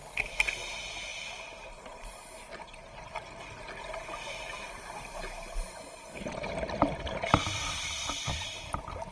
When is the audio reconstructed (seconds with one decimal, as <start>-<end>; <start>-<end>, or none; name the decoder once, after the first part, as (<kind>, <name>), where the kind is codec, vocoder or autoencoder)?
none